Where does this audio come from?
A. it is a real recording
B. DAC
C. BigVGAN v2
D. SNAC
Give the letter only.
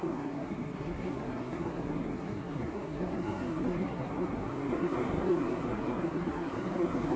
D